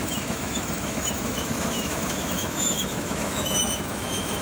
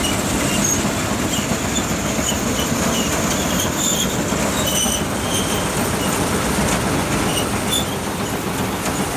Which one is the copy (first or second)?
first